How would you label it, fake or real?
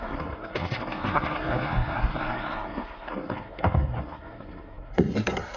fake